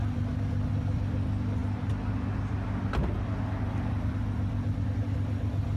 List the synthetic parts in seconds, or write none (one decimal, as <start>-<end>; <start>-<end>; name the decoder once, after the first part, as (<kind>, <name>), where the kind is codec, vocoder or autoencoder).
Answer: none